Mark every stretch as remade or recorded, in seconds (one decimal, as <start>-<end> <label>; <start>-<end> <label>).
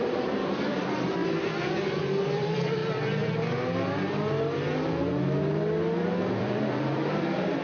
0.0-1.2 remade; 1.2-2.4 recorded; 2.4-2.8 remade; 2.8-6.3 recorded; 6.3-7.6 remade